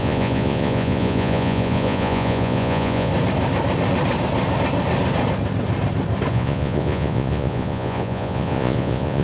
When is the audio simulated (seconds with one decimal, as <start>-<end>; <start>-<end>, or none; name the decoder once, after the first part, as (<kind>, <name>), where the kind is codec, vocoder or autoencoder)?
0.0-3.1 (vocoder, Vocos); 6.3-9.2